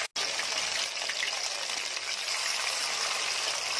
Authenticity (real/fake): real